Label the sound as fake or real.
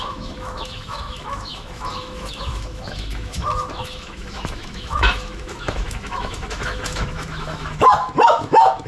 fake